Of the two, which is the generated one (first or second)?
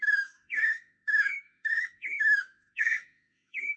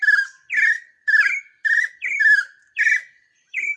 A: first